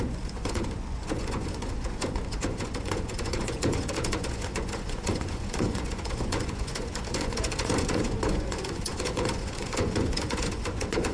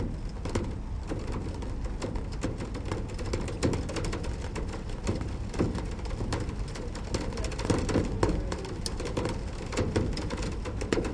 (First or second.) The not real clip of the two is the first